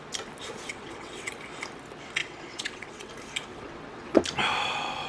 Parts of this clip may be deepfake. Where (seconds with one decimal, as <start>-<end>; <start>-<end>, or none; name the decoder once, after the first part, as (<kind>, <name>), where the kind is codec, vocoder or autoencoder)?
0.7-1.3 (vocoder, WaveNeXt); 2.2-3.1; 3.5-4.2